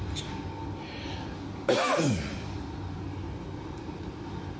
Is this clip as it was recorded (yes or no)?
yes